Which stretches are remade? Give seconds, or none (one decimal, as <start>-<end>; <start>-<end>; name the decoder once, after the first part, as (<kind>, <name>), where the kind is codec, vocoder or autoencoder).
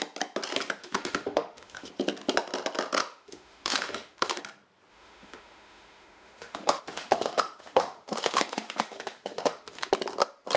0.8-1.9 (autoencoder, DAC-VAE); 3.0-4.4; 4.9-9.9